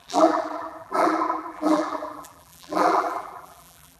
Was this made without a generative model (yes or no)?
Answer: no